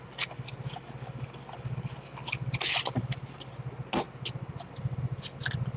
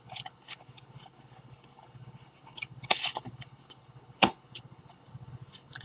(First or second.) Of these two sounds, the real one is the first